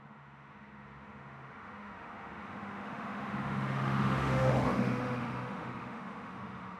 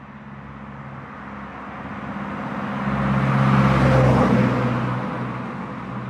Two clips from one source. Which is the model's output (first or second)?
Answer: first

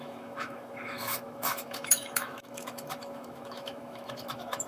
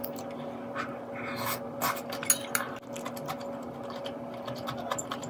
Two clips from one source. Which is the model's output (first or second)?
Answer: first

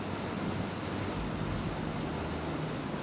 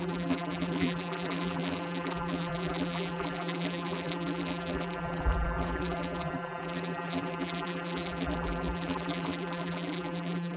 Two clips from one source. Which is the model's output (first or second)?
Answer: second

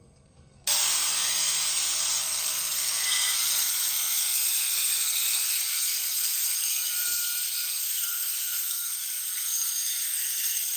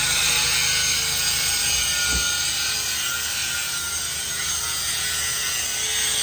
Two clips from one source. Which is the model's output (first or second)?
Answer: first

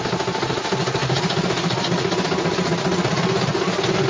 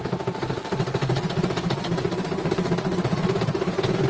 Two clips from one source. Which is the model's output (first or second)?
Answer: second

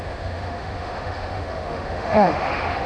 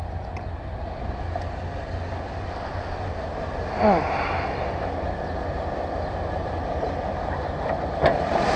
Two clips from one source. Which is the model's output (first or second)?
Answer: first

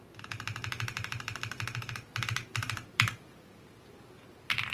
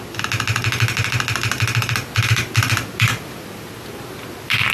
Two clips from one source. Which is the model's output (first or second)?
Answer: first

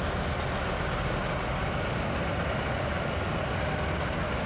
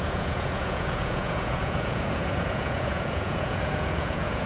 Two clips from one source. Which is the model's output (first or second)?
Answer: second